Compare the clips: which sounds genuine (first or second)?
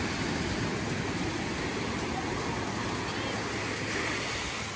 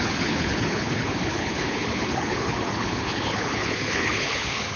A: first